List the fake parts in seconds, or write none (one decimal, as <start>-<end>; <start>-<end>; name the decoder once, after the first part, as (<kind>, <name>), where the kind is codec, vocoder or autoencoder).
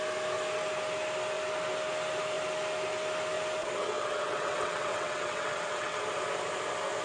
3.6-6.0 (vocoder, WaveNeXt)